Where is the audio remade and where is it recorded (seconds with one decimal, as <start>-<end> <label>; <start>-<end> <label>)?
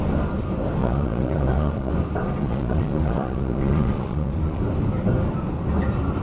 0.0-0.8 recorded; 0.8-1.9 remade; 1.9-2.4 recorded; 2.4-4.6 remade; 4.6-6.2 recorded